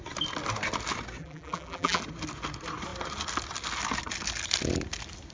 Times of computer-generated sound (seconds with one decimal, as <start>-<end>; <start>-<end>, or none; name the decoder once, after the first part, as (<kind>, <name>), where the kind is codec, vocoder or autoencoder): 1.2-2.0 (vocoder, BigVGAN v2)

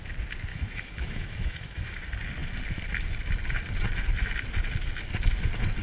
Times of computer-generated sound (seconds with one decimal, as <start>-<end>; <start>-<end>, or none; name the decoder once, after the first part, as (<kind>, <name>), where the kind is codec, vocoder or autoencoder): 0.5-2.0 (autoencoder, DAC-VAE)

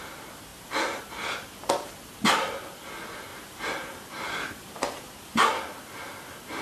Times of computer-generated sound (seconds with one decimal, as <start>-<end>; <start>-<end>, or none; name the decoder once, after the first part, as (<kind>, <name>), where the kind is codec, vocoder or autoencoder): 0.5-1.0 (vocoder, BigVGAN v2); 3.3-5.5

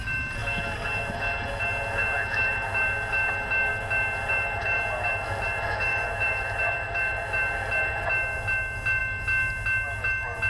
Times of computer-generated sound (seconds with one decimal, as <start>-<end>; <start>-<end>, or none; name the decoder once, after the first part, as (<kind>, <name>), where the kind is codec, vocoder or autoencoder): 5.9-6.9 (vocoder, BigVGAN v2)

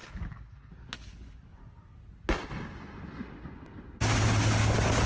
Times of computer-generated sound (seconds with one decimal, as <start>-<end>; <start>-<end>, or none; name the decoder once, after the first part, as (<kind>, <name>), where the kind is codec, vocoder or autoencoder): 0.7-1.6 (codec, DAC)